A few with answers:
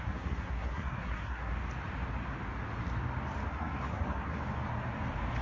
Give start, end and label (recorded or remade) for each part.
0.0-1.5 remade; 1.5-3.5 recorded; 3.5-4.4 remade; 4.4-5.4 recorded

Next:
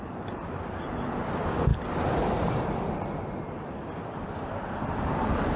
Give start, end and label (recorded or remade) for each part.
0.0-5.6 recorded